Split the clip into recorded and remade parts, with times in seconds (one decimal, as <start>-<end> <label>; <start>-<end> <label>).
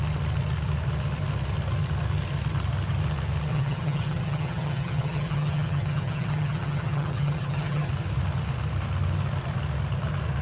0.0-3.5 recorded; 3.5-7.9 remade; 7.9-10.4 recorded